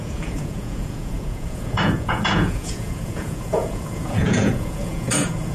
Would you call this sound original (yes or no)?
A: no